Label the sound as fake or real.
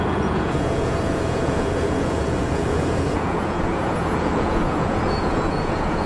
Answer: fake